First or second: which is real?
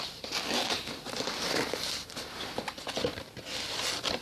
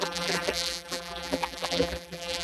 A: first